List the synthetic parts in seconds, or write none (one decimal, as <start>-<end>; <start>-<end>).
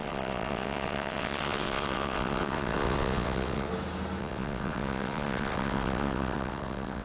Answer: 0.0-3.7; 4.2-7.0